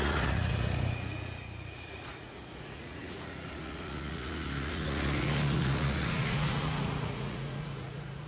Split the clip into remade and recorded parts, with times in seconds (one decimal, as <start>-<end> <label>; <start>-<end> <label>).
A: 0.0-8.3 remade